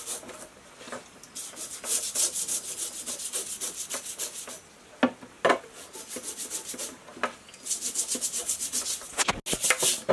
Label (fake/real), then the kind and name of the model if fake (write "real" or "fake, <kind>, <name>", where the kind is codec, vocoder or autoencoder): real